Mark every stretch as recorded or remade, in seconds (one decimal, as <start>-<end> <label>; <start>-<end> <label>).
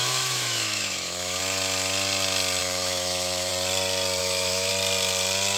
0.0-1.4 remade; 1.4-2.6 recorded; 2.6-3.5 remade; 3.5-4.2 recorded; 4.2-4.7 remade; 4.7-5.6 recorded